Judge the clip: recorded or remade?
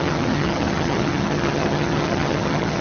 remade